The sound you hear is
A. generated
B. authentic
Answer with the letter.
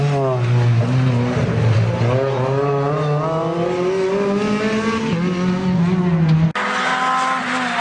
B